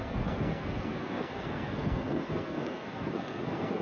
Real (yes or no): no